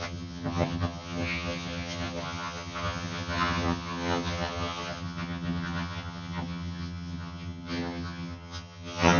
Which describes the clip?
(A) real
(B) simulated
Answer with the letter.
B